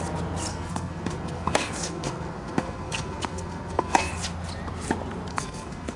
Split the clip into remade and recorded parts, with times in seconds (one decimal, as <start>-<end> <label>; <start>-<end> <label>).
0.0-0.5 recorded; 0.5-4.1 remade; 4.1-5.3 recorded; 5.3-6.0 remade